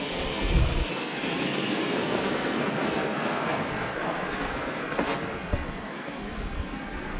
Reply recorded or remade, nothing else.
remade